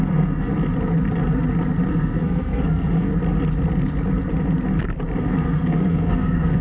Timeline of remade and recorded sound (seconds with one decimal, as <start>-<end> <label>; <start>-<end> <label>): 0.0-0.5 remade; 0.5-1.9 recorded; 1.9-3.1 remade; 3.1-5.2 recorded; 5.2-6.6 remade